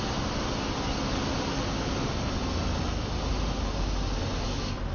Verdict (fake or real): real